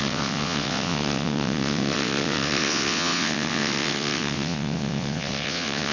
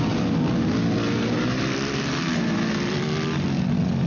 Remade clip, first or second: first